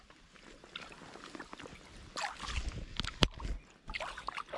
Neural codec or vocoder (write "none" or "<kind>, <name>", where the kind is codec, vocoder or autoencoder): none